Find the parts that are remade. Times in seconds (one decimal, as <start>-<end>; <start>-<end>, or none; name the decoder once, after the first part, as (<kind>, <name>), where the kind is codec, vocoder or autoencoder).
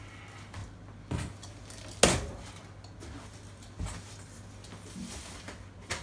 none